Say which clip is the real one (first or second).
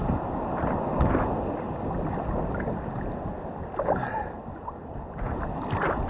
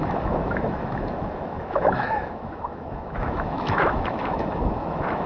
first